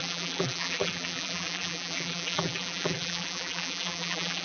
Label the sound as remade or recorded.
remade